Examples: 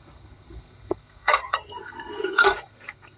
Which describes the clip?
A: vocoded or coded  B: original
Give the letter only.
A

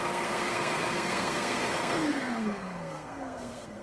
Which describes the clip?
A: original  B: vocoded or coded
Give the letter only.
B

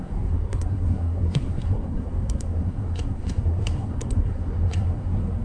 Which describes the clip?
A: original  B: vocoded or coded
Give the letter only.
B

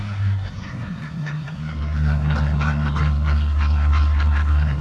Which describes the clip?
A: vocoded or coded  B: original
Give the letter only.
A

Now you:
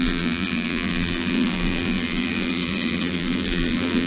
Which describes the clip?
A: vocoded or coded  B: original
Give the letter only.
A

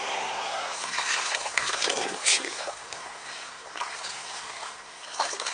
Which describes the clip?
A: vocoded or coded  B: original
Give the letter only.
A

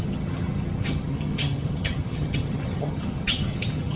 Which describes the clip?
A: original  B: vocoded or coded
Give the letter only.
B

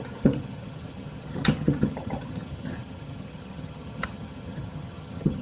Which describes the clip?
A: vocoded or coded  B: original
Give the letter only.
A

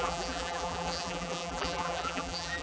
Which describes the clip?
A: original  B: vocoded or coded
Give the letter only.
B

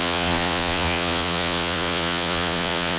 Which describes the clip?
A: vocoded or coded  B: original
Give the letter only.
A